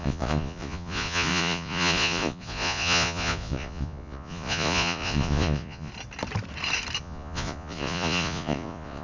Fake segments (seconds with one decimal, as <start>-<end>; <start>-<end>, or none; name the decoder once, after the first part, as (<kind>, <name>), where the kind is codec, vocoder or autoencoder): 0.0-5.9 (vocoder, Vocos); 7.0-9.0